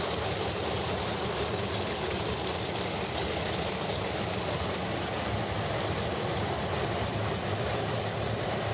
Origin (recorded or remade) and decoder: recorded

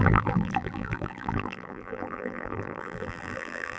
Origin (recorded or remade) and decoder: remade, vocoder, BigVGAN v2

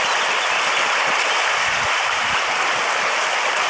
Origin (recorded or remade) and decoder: recorded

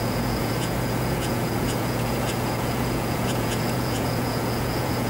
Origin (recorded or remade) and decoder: remade, vocoder, Vocos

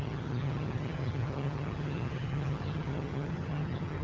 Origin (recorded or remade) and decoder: remade, vocoder, HiFi-GAN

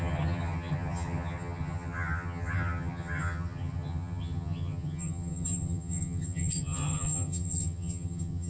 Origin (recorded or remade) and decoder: remade, vocoder, HiFi-GAN